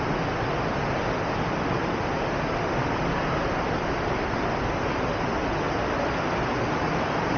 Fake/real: real